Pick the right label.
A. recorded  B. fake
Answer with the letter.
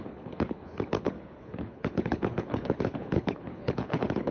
B